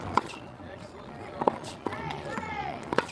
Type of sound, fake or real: fake